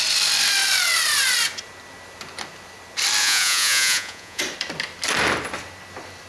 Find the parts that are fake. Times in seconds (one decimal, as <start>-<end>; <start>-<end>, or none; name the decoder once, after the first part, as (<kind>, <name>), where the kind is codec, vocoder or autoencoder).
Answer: 3.2-4.4 (vocoder, Vocos)